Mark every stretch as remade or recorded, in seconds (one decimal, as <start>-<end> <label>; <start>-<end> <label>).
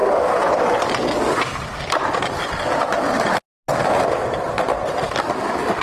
0.0-5.8 recorded